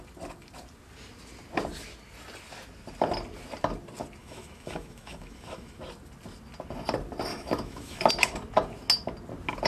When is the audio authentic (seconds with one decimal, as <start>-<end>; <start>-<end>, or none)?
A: 0.0-4.2; 5.8-7.3; 8.1-9.7